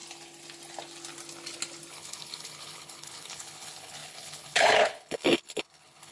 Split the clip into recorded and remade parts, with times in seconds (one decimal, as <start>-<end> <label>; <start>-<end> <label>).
0.0-1.9 recorded; 1.9-6.1 remade